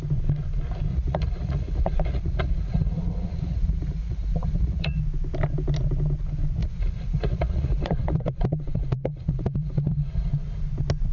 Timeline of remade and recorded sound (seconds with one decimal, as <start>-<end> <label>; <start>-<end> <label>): 0.0-0.9 recorded; 0.9-5.0 remade; 5.0-6.6 recorded; 6.6-10.3 remade; 10.3-11.1 recorded